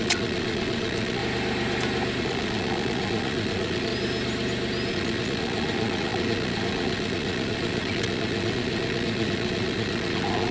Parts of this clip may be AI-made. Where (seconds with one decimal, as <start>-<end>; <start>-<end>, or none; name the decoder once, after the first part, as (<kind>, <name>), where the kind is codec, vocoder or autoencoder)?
0.0-1.2 (vocoder, Vocos); 2.2-3.9; 4.9-10.5